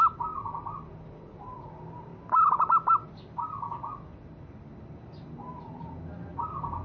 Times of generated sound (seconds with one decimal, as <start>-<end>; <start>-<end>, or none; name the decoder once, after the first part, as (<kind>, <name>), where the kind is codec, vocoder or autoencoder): none